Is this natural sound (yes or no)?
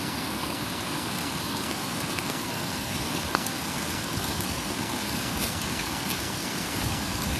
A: no